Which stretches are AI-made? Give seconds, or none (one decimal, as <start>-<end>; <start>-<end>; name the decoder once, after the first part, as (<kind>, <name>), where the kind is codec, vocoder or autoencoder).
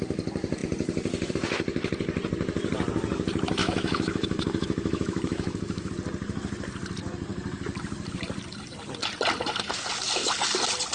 3.6-5.9 (autoencoder, DAC-VAE)